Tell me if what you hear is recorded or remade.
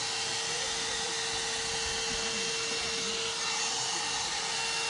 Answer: recorded